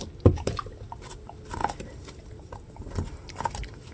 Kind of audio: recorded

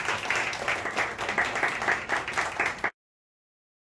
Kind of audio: recorded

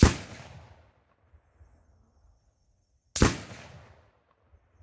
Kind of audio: recorded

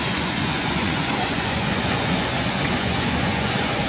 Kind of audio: remade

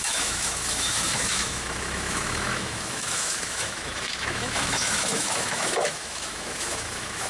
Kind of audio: remade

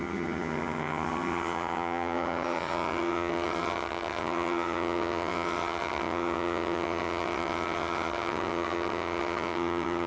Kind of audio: remade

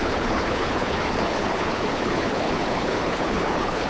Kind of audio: remade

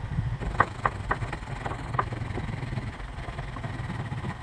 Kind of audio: remade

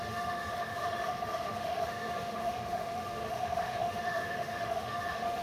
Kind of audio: remade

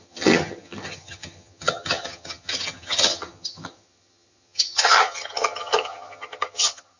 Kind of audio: remade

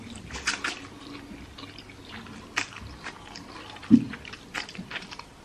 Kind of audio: remade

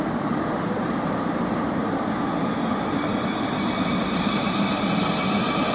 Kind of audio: remade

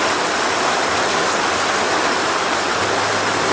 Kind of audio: recorded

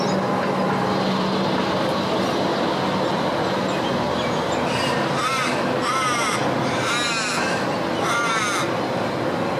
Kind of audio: recorded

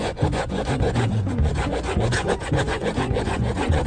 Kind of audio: remade